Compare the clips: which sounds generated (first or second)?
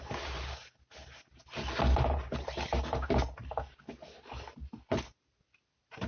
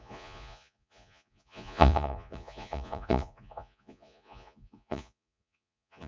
second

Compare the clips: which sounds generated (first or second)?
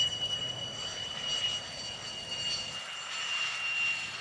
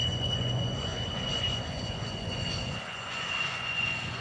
second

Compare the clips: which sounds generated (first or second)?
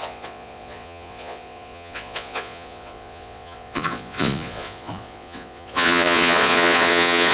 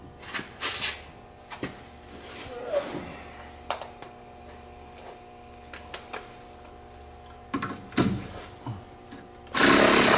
first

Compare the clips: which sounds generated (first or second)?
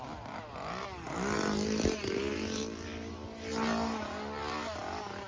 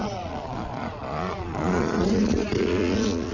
second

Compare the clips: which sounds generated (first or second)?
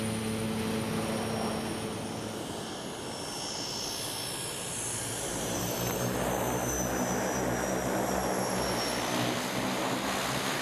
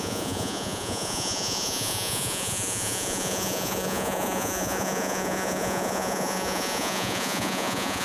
second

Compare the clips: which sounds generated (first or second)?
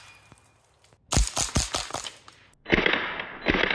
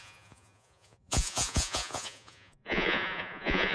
second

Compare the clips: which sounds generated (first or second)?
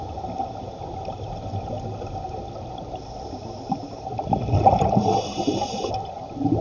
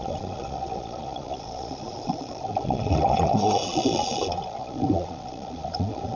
second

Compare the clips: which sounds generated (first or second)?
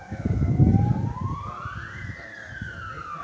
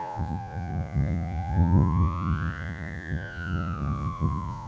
second